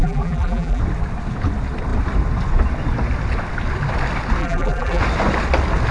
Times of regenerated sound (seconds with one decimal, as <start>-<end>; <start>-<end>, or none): 0.0-0.8; 4.4-5.0